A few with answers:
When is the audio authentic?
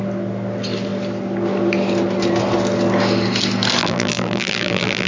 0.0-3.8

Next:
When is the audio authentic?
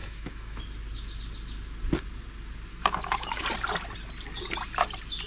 0.6-2.7; 3.4-5.3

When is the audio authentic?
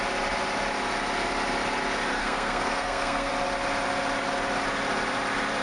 0.0-2.2; 3.3-5.6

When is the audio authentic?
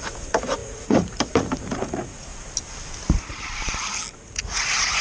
2.3-4.1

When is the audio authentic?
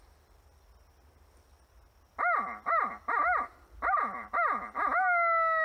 0.0-3.5; 4.3-5.6